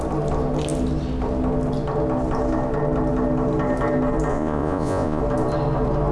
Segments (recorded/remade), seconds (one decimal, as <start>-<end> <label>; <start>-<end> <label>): 0.0-4.3 recorded; 4.3-5.2 remade; 5.2-6.1 recorded